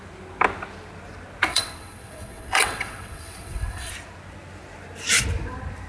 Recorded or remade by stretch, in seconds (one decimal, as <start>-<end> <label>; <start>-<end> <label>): 0.0-1.5 recorded; 1.5-3.9 remade; 3.9-5.9 recorded